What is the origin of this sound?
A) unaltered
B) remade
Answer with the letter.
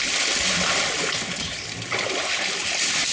A